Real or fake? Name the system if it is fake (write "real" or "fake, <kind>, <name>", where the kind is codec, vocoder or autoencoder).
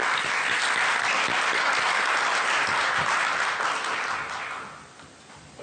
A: real